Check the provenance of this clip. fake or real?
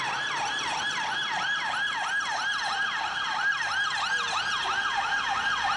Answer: real